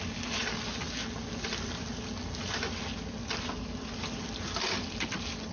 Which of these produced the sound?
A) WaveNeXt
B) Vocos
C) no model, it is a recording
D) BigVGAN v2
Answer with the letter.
C